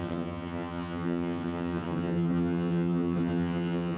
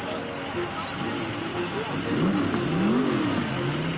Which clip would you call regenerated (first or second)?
first